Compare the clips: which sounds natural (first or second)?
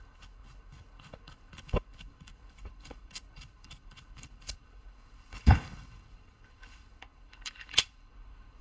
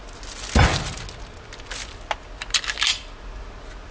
second